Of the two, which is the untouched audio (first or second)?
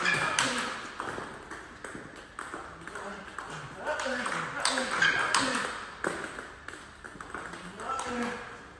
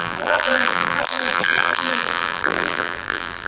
first